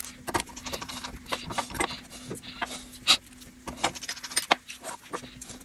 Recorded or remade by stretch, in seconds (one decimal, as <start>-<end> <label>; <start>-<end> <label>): 0.0-0.6 recorded; 0.6-1.9 remade; 1.9-5.6 recorded